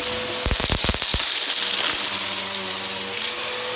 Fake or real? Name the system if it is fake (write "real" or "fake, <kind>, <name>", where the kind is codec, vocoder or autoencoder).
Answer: real